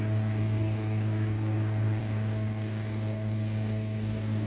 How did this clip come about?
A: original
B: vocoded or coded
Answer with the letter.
B